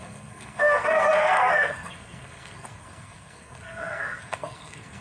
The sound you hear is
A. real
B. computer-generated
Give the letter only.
B